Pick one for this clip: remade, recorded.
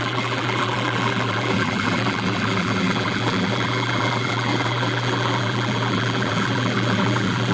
remade